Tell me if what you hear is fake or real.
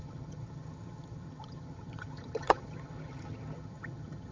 fake